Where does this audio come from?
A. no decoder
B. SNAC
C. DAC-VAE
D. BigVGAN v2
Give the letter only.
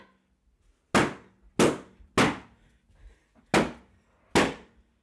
A